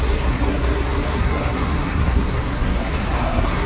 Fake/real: fake